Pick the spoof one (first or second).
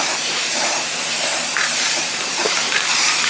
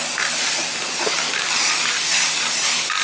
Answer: first